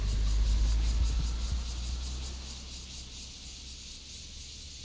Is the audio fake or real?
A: real